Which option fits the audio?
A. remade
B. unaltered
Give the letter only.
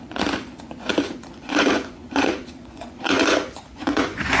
A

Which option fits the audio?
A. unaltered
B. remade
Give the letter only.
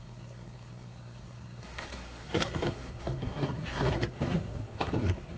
B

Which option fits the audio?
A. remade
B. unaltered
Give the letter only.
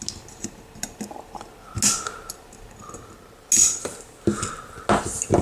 B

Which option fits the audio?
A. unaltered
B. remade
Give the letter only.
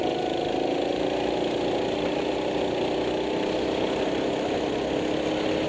A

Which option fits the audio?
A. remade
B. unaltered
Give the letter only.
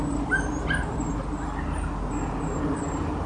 B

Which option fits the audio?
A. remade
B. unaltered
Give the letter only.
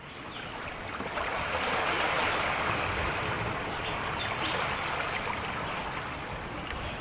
B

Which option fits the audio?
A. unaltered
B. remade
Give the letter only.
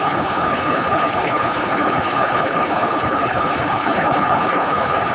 B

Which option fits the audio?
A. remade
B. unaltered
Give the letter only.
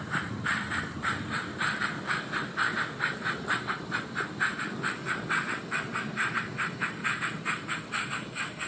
A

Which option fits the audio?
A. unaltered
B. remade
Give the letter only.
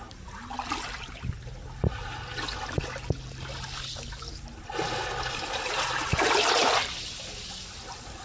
A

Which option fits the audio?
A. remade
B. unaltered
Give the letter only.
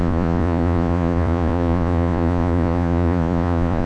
A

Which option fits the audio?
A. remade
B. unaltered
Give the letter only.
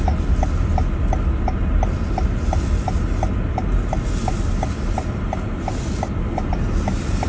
B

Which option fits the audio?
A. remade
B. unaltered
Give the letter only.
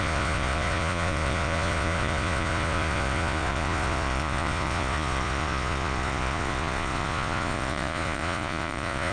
A